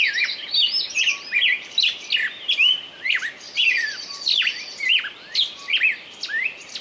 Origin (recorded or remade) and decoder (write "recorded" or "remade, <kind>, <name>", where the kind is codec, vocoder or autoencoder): recorded